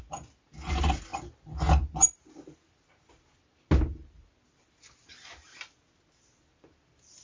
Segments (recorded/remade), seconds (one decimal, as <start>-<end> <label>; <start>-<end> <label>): 0.0-7.2 recorded

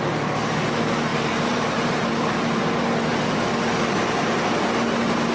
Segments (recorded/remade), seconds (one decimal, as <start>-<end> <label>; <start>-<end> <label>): 0.0-1.1 recorded; 1.1-2.8 remade; 2.8-5.3 recorded

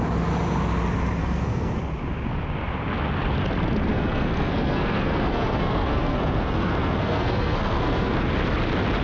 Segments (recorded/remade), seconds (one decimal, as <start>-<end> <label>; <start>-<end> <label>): 0.0-1.2 recorded; 1.2-1.8 remade; 1.8-3.9 recorded; 3.9-8.3 remade; 8.3-9.0 recorded

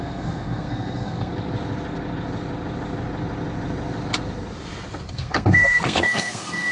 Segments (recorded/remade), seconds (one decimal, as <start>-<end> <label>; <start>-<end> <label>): 0.0-1.3 remade; 1.3-5.1 recorded; 5.1-6.7 remade

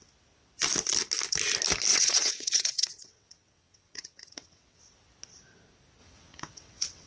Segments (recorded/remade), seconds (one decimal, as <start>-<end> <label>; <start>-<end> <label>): 0.0-1.9 recorded; 1.9-4.8 remade; 4.8-6.0 recorded; 6.0-7.1 remade